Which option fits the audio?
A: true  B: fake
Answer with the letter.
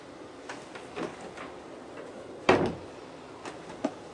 A